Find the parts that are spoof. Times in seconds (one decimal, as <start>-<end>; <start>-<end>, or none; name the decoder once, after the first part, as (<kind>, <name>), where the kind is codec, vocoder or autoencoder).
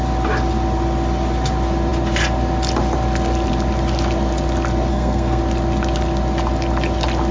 4.9-5.4 (codec, SNAC)